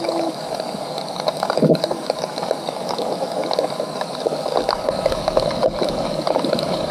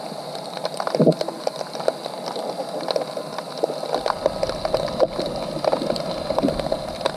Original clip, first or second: second